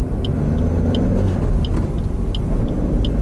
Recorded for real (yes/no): yes